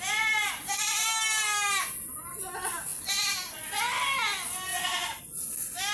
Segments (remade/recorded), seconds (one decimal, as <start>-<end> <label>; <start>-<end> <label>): 0.0-4.7 recorded; 4.7-5.2 remade; 5.2-5.9 recorded